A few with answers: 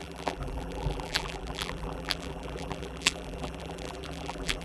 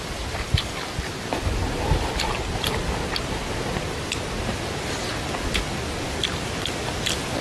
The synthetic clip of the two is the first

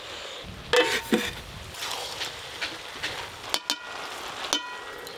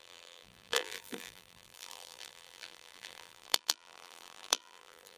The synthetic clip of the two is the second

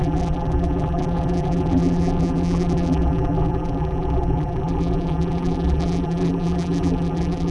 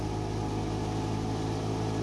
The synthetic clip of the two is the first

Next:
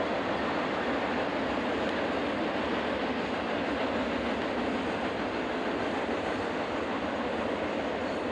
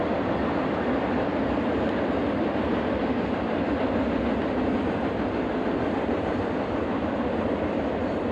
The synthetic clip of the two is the second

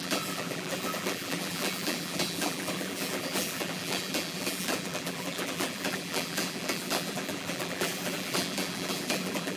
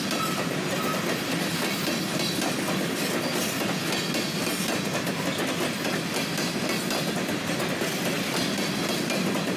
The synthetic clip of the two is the first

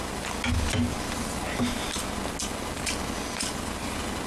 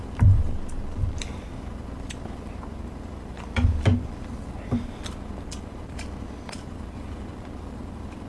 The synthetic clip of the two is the second